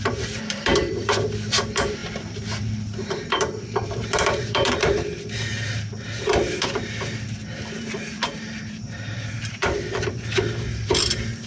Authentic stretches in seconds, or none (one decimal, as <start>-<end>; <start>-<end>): 2.0-2.6